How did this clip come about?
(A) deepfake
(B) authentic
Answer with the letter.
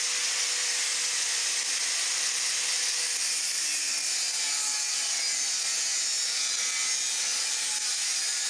B